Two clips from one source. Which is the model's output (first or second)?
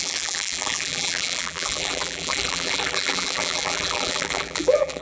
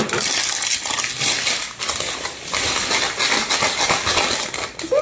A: first